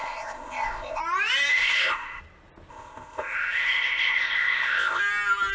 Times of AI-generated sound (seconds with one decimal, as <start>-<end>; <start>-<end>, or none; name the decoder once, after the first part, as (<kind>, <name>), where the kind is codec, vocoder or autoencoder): 0.0-1.0 (codec, ZipCodec); 1.5-2.2; 2.7-5.0